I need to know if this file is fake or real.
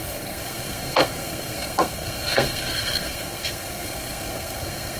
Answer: fake